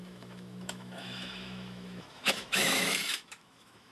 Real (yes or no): no